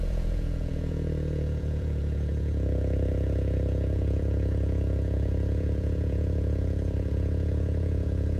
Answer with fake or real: fake